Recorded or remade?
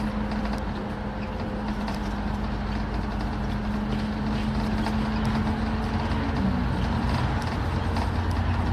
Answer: recorded